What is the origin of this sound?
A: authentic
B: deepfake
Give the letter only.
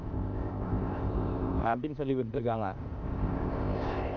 B